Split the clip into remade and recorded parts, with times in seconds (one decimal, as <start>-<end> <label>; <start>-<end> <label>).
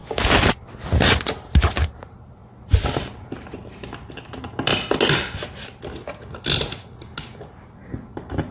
0.0-1.6 recorded; 1.6-2.4 remade; 2.4-3.3 recorded; 3.3-4.7 remade; 4.7-7.4 recorded; 7.4-8.5 remade